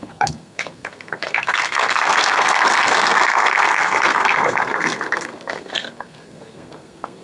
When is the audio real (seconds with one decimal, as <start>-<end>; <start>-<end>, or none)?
none